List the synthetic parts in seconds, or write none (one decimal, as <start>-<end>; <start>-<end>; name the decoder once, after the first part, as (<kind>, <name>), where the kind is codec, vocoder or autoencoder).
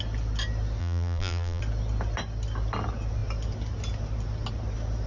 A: 0.8-1.6 (vocoder, BigVGAN v2)